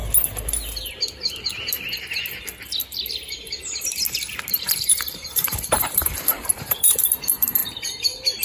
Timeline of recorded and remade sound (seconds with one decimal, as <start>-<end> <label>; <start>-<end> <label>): 0.0-4.6 recorded; 4.6-8.4 remade